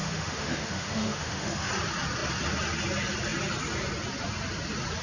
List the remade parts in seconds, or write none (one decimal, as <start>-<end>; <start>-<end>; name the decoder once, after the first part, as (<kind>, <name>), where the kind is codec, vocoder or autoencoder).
0.0-1.7 (autoencoder, DAC-VAE)